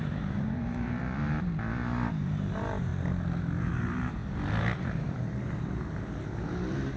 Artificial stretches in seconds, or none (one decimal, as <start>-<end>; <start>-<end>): 0.0-1.0; 2.3-2.9; 3.6-4.2; 4.8-7.0